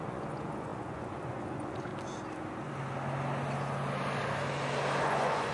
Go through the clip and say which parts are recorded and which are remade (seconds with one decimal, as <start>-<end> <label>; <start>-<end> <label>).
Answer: 0.0-1.9 remade; 1.9-5.0 recorded; 5.0-5.5 remade

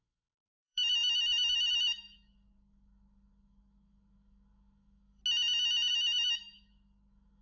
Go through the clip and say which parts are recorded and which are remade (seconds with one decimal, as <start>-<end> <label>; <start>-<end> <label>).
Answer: 0.0-5.2 remade; 5.2-5.9 recorded; 5.9-7.4 remade

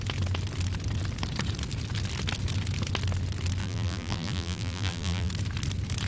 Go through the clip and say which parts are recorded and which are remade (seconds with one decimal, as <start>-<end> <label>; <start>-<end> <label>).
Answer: 0.0-3.6 recorded; 3.6-5.3 remade; 5.3-6.1 recorded

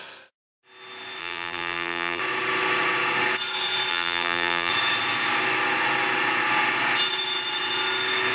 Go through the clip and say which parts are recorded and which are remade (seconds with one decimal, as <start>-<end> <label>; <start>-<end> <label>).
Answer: 0.0-1.2 recorded; 1.2-2.2 remade; 2.2-3.9 recorded; 3.9-4.7 remade; 4.7-8.3 recorded